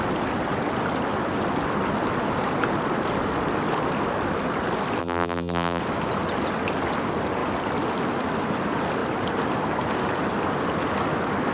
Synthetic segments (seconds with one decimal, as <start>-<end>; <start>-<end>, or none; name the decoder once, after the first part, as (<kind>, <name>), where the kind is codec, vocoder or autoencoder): 5.0-5.8 (vocoder, BigVGAN v2)